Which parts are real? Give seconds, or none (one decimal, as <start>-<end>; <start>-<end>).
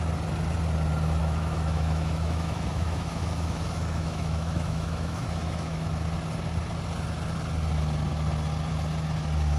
0.0-1.2; 5.9-9.6